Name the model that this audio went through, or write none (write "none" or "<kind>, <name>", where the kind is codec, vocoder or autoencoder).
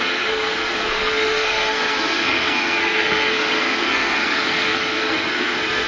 codec, SNAC